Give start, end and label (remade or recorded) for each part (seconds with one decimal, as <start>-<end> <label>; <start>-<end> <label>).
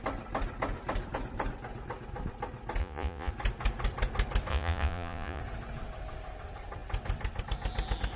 0.0-2.8 recorded; 2.8-3.3 remade; 3.3-4.5 recorded; 4.5-5.4 remade; 5.4-8.2 recorded